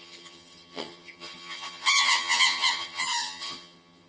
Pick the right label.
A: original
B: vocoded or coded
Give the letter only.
B